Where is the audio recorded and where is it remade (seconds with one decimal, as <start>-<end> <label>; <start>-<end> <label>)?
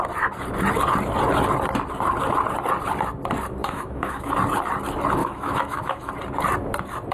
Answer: 0.0-3.6 recorded; 3.6-4.3 remade; 4.3-5.2 recorded; 5.2-6.1 remade; 6.1-7.1 recorded